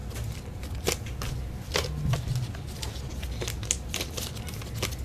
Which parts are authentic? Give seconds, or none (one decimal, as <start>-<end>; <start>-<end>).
0.0-5.0